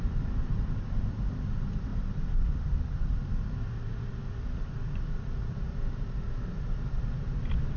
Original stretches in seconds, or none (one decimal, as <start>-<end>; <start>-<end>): none